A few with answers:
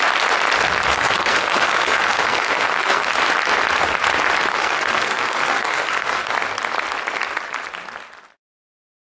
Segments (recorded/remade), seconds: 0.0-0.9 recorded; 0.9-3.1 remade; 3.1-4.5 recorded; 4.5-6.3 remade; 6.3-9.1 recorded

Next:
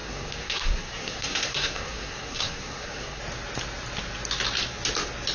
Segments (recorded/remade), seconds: 0.0-3.2 remade; 3.2-5.3 recorded

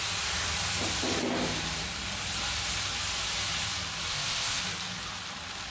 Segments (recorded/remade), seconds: 0.0-4.1 recorded; 4.1-4.6 remade; 4.6-5.7 recorded

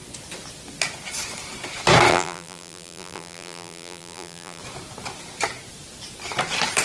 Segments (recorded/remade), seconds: 0.0-2.1 recorded; 2.1-4.6 remade; 4.6-6.8 recorded

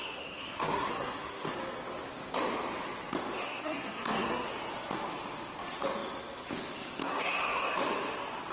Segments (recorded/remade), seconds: 0.0-1.5 remade; 1.5-3.4 recorded; 3.4-4.5 remade; 4.5-7.0 recorded; 7.0-7.7 remade; 7.7-8.5 recorded

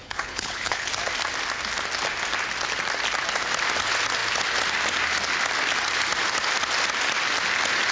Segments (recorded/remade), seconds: 0.0-0.9 remade; 0.9-7.9 recorded